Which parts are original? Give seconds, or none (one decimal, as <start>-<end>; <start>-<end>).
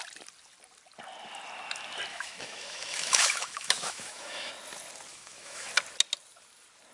0.0-2.1; 4.5-5.1; 5.7-6.9